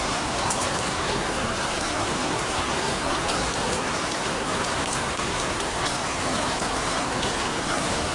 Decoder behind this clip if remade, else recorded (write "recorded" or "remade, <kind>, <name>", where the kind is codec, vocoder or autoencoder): remade, codec, SNAC